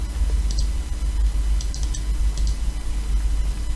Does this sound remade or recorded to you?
recorded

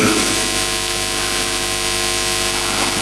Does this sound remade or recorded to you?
recorded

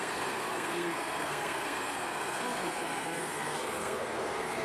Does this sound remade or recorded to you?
remade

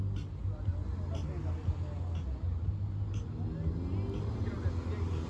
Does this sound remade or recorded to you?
recorded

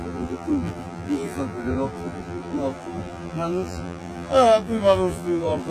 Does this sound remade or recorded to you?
remade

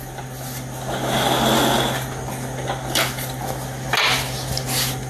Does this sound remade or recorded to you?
recorded